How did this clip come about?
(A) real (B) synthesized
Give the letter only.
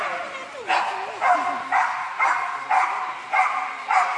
A